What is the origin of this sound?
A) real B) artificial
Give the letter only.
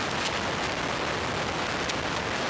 A